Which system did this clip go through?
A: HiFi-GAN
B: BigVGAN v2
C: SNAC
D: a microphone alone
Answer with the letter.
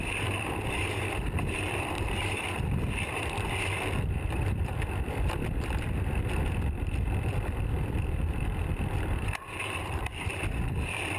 B